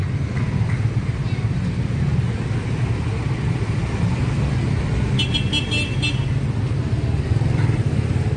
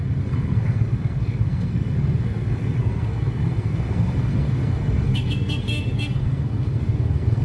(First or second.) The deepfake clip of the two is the second